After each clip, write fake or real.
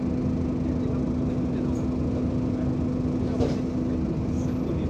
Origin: real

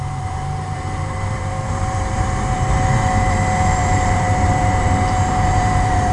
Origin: fake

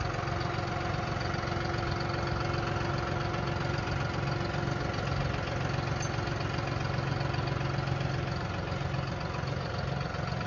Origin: real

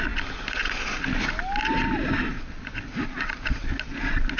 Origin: real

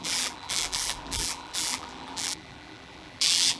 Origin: fake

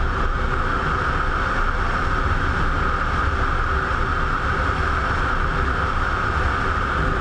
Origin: real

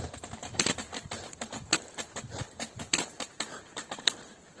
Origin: fake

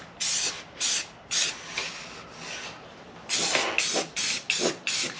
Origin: real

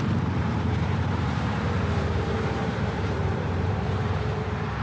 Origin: fake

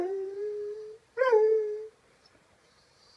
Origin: fake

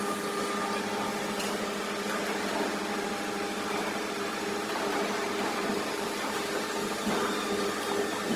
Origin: real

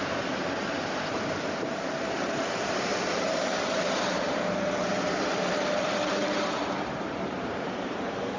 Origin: fake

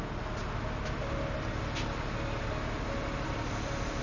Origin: real